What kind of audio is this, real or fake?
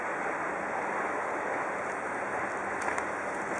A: real